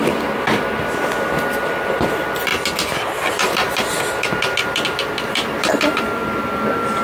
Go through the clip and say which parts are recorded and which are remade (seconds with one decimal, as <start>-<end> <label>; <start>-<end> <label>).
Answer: 0.0-2.5 remade; 2.5-3.3 recorded; 3.3-6.2 remade; 6.2-7.0 recorded